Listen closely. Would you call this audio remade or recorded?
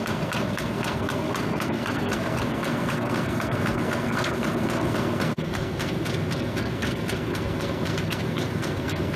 remade